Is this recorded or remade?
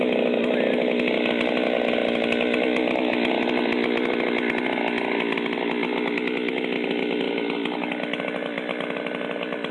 recorded